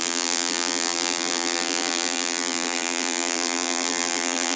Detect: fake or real fake